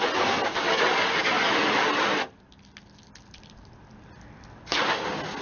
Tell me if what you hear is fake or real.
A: real